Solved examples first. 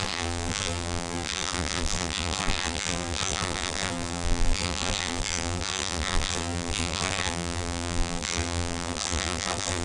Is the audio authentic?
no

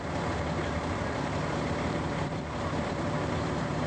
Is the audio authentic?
no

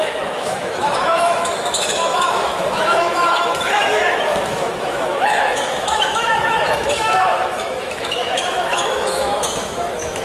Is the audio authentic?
no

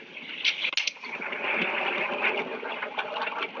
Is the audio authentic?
yes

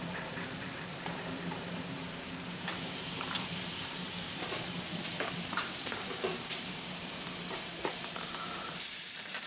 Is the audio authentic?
no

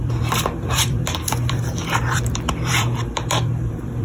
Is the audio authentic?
no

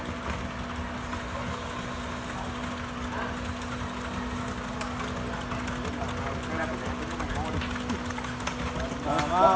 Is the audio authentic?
yes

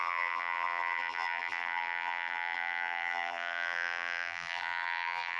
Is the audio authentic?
no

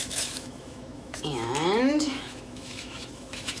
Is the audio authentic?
no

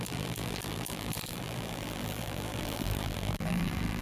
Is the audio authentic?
no